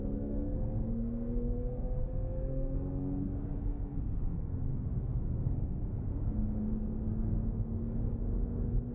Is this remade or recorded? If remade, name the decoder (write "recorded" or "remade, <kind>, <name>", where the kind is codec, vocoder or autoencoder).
remade, codec, SNAC